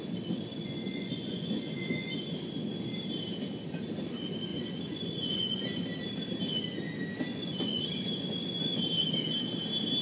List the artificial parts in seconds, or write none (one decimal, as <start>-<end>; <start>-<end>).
0.5-2.9; 4.5-5.6; 7.3-8.8